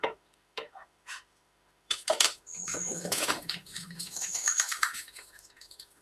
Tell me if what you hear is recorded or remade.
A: remade